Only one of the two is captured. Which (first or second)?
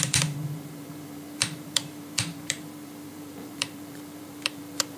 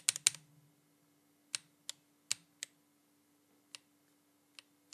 second